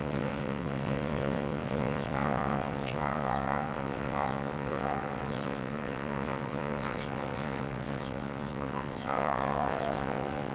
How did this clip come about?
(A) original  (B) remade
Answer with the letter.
B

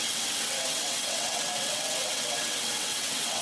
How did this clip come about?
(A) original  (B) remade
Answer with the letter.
B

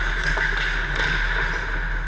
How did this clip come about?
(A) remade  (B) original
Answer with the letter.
B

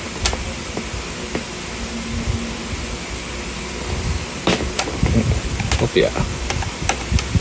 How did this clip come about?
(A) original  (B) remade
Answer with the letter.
A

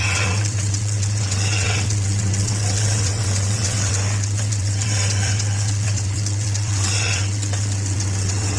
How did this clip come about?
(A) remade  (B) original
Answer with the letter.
A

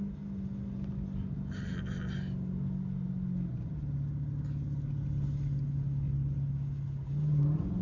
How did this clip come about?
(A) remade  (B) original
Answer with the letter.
B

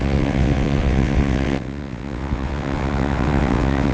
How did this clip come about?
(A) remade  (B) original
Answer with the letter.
A